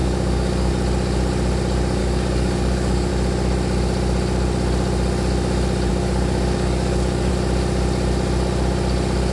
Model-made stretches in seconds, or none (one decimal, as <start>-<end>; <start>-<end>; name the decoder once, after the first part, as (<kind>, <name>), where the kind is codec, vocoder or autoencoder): 0.0-0.7 (codec, DAC); 2.0-3.1; 5.9-7.3